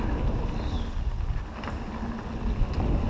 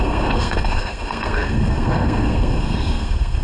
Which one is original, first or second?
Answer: first